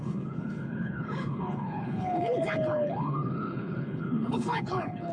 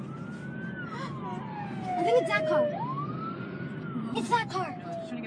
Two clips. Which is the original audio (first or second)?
second